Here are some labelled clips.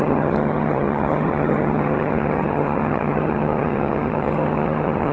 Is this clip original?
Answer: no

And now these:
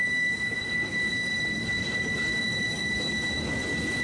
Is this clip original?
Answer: yes